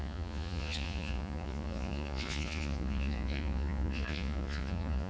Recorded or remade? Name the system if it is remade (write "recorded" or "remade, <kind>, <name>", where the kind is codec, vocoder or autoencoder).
remade, vocoder, Vocos